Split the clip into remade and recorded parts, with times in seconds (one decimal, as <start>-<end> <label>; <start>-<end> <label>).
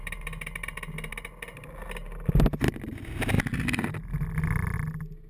0.0-5.3 recorded